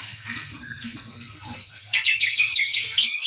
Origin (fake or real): fake